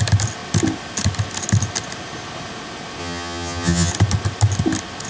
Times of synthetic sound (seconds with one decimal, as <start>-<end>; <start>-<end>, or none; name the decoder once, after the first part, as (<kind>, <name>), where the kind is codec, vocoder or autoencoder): 3.0-3.9 (vocoder, HiFi-GAN)